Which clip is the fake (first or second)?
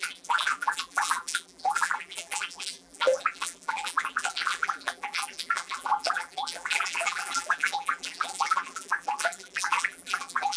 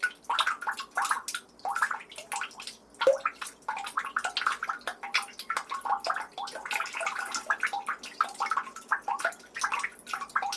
first